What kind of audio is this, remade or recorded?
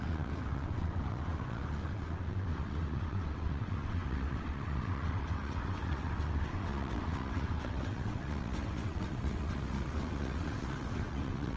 remade